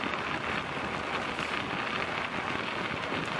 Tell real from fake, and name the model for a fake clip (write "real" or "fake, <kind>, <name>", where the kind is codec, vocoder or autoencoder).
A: real